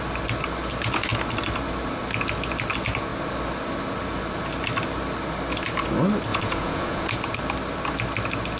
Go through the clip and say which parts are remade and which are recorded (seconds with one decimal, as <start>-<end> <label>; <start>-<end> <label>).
0.0-6.3 recorded; 6.3-7.1 remade; 7.1-8.6 recorded

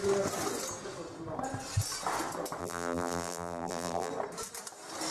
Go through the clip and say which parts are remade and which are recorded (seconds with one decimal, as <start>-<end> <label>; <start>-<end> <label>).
0.0-2.6 recorded; 2.6-4.1 remade; 4.1-5.1 recorded